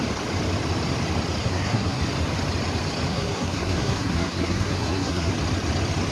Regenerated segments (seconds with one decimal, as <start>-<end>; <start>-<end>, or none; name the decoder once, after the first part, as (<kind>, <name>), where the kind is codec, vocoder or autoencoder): 1.4-2.0 (codec, SNAC); 3.1-5.3